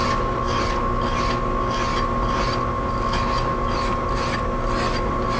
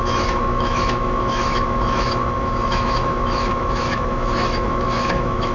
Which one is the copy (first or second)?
second